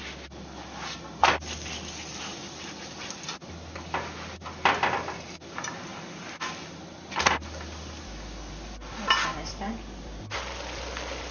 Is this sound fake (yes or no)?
no